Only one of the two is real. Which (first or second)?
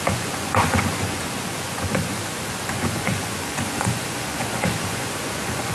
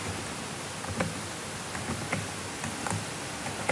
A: second